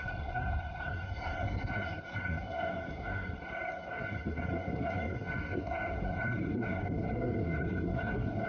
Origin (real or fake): fake